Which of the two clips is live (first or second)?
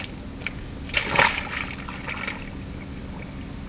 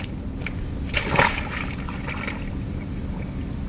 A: first